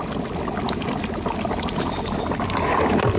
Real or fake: real